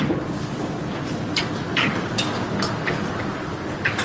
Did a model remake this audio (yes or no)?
no